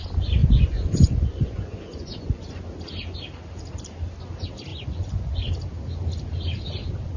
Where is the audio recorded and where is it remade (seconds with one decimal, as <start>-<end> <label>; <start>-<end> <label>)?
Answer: 0.0-0.4 recorded; 0.4-2.6 remade; 2.6-4.7 recorded; 4.7-5.3 remade; 5.3-7.2 recorded